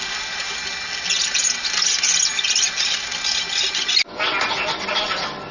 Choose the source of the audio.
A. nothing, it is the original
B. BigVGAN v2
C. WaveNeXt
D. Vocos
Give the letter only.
A